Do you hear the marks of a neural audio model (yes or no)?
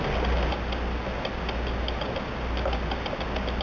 no